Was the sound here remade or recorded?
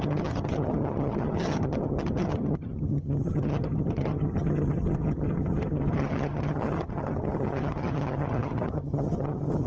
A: remade